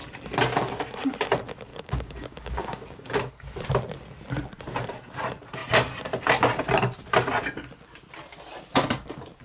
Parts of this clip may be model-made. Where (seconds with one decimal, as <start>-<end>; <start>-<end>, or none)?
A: 1.7-3.3